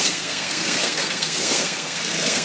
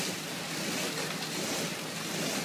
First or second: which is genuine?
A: second